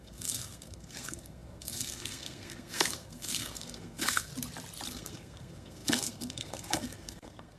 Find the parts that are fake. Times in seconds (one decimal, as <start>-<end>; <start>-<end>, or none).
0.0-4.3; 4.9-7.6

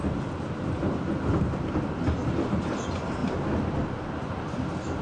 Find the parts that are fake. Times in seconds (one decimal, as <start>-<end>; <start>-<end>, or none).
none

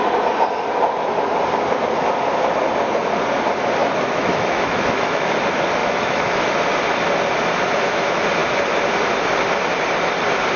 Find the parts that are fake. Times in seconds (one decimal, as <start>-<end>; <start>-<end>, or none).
3.8-5.3; 5.8-6.5

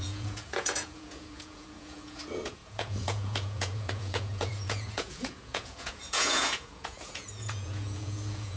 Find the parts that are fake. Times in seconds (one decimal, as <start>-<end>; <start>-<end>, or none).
0.0-8.6

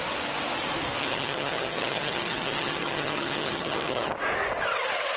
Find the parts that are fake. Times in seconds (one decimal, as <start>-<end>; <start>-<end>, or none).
1.0-4.1

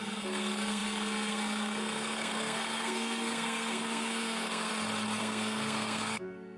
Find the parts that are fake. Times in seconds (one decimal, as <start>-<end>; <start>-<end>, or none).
0.0-4.7; 5.2-6.6

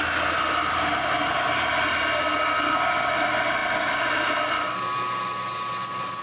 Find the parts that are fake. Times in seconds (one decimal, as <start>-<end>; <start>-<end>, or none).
none